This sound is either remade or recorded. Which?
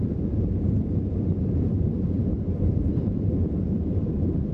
remade